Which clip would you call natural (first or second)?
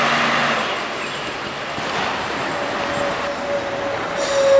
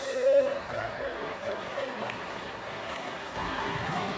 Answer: first